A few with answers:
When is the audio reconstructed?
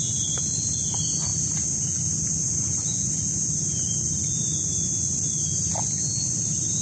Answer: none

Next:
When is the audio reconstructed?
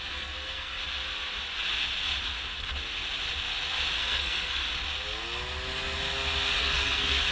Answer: 0.0-0.8 (codec, SNAC); 4.0-4.6; 6.6-7.3